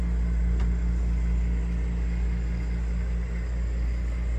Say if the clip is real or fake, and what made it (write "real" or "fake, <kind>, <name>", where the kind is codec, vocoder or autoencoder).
real